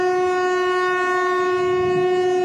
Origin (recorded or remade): recorded